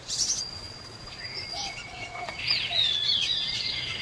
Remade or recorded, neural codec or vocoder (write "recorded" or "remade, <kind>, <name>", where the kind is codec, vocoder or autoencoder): remade, vocoder, Vocos